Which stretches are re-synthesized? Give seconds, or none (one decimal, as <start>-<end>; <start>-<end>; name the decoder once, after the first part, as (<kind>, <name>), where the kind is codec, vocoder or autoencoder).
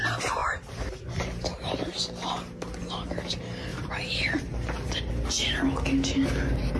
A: 0.4-1.0 (vocoder, BigVGAN v2); 3.7-5.1